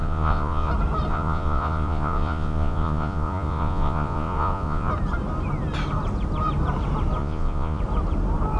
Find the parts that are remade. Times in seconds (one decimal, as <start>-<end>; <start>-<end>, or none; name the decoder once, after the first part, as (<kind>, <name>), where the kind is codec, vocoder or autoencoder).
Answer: 0.0-0.7 (vocoder, Vocos); 1.1-4.9; 7.2-7.8